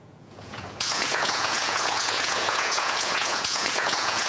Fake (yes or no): yes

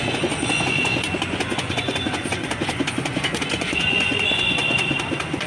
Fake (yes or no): yes